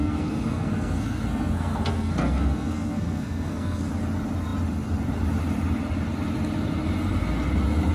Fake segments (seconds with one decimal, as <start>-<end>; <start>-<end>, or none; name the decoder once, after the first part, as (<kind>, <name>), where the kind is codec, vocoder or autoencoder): 0.0-3.9 (codec, SNAC)